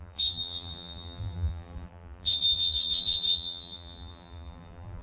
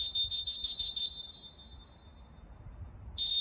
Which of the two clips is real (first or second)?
second